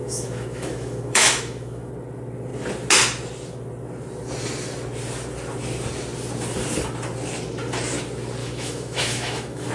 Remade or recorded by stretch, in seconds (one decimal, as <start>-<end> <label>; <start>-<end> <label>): 0.0-1.9 remade; 1.9-8.4 recorded; 8.4-9.7 remade